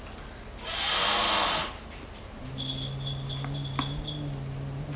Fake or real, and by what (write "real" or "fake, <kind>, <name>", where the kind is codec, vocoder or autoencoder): real